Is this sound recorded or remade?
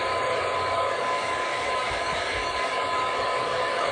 remade